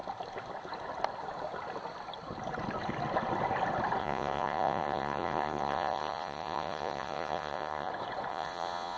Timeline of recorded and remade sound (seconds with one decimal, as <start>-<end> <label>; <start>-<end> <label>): 0.0-4.0 recorded; 4.0-7.9 remade; 7.9-8.3 recorded; 8.3-9.0 remade